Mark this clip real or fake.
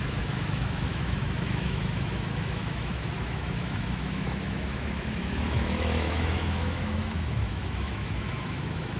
fake